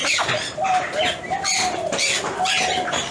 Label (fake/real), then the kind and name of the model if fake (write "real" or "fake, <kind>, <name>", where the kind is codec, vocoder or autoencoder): real